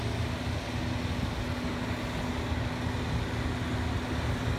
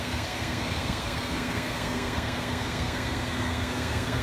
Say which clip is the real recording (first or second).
first